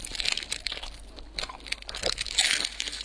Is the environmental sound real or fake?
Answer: real